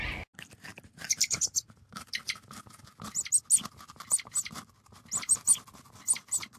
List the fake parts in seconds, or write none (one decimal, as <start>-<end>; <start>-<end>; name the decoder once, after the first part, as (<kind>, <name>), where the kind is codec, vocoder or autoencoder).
0.7-2.8 (vocoder, BigVGAN v2)